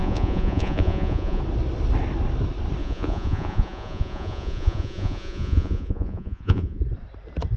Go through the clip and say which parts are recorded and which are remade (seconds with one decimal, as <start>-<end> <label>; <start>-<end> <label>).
0.0-1.4 remade; 1.4-2.8 recorded; 2.8-6.8 remade; 6.8-7.6 recorded